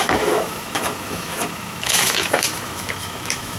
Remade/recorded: remade